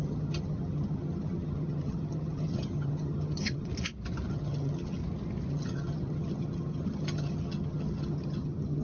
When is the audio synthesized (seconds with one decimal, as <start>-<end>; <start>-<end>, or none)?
0.0-3.7; 4.3-5.0; 5.5-8.8